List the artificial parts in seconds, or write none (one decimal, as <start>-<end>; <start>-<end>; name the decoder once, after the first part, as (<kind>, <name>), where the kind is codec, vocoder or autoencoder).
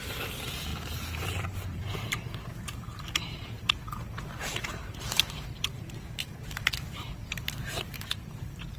0.0-8.8 (vocoder, BigVGAN v2)